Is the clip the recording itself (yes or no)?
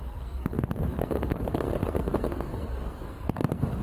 no